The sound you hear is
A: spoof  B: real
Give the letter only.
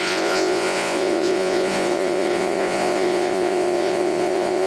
A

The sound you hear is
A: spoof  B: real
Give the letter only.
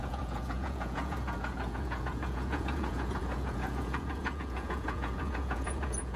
A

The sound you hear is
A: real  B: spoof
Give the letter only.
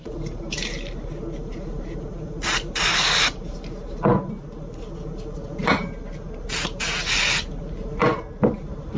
A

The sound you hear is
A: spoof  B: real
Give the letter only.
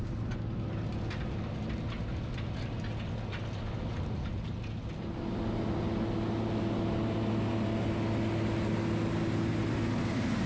B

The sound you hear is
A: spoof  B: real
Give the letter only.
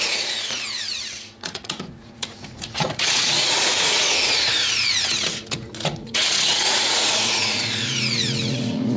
A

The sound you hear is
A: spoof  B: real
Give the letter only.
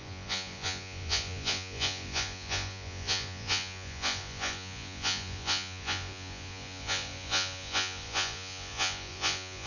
A